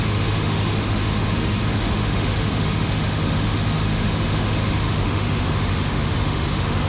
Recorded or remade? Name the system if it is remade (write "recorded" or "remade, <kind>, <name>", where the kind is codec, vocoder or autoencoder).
remade, autoencoder, DAC-VAE